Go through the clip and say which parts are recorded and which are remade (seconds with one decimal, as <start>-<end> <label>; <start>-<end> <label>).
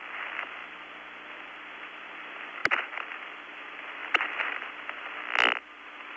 0.0-6.2 recorded